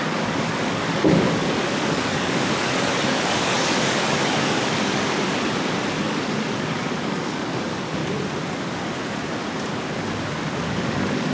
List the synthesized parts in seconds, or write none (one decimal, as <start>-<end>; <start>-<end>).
0.0-5.3; 6.0-8.0; 10.5-11.3